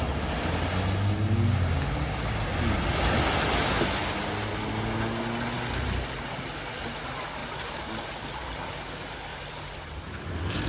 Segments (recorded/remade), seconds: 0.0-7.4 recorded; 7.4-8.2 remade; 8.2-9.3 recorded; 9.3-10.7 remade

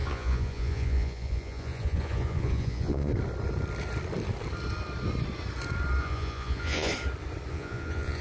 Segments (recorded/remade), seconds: 0.0-3.1 remade; 3.1-6.0 recorded; 6.0-6.9 remade; 6.9-7.5 recorded; 7.5-8.2 remade